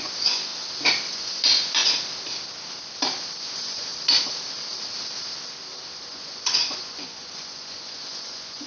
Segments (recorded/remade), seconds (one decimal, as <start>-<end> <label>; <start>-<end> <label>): 0.0-0.5 remade; 0.5-1.1 recorded; 1.1-1.8 remade; 1.8-3.4 recorded; 3.4-3.9 remade; 3.9-6.1 recorded; 6.1-8.7 remade